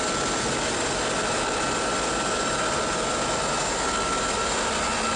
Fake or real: real